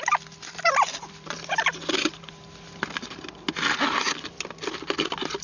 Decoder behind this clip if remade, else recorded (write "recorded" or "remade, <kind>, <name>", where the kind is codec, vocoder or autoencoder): recorded